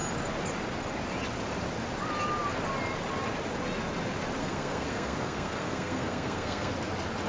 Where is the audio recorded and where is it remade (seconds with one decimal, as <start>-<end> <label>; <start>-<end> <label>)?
0.0-4.4 recorded; 4.4-6.7 remade; 6.7-7.3 recorded